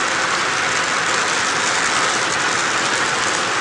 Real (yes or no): yes